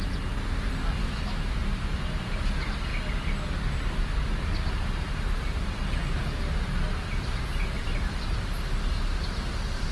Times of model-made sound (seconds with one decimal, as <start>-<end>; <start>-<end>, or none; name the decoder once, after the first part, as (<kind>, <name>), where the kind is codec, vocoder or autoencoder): 1.0-1.6 (autoencoder, DAC-VAE)